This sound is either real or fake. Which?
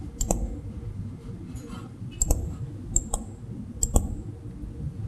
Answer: real